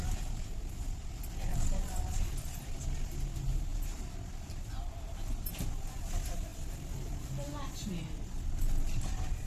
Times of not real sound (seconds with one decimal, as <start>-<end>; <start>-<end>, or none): 3.7-5.6